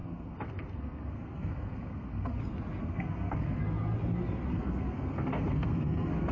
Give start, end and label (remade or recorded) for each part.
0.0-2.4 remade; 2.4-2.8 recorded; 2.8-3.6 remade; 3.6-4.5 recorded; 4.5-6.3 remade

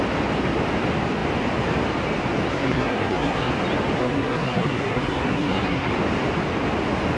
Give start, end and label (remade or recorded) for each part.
0.0-2.5 recorded; 2.5-3.5 remade; 3.5-4.0 recorded; 4.0-5.9 remade; 5.9-7.2 recorded

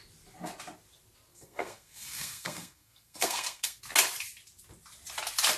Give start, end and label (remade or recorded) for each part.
0.0-1.3 recorded; 1.3-3.8 remade; 3.8-5.6 recorded

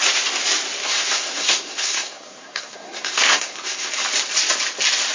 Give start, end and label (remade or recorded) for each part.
0.0-0.8 recorded; 0.8-3.9 remade; 3.9-5.1 recorded

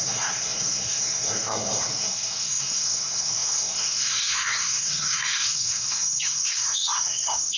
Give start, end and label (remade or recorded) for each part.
0.0-7.6 remade

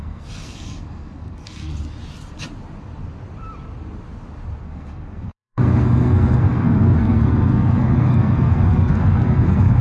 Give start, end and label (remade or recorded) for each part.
0.0-1.7 remade; 1.7-4.6 recorded; 4.6-9.8 remade